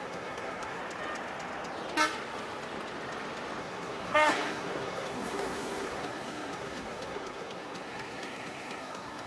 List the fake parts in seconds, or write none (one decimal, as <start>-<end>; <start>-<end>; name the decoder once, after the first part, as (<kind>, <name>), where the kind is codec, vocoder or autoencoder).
0.0-0.8 (codec, SNAC); 3.6-9.3